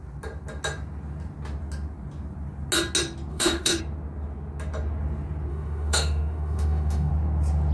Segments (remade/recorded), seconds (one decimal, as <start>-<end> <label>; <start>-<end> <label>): 0.0-3.3 recorded; 3.3-3.8 remade; 3.8-5.5 recorded; 5.5-7.1 remade; 7.1-7.7 recorded

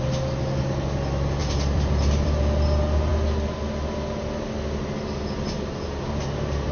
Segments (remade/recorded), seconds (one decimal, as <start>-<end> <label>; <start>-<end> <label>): 0.0-1.4 recorded; 1.4-2.4 remade; 2.4-6.7 recorded